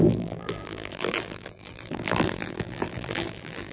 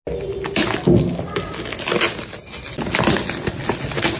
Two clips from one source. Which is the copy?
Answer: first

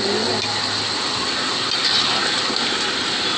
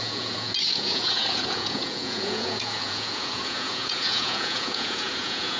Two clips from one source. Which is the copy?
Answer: second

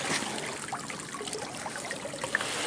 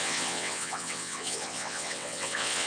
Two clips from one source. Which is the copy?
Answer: second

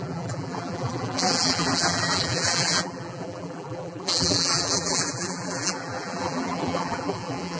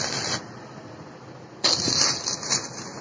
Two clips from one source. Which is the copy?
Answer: first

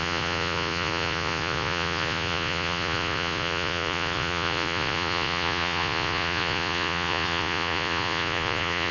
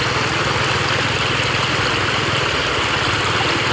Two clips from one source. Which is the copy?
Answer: first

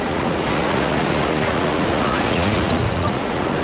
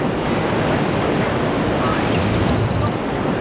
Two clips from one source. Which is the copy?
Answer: first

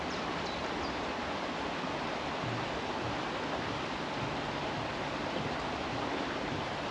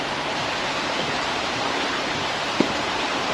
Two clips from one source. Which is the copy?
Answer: second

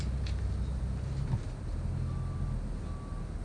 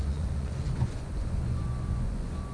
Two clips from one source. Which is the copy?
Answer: second